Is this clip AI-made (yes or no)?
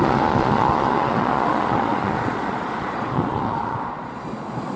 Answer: yes